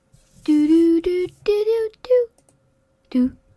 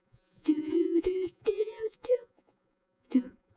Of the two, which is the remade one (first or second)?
second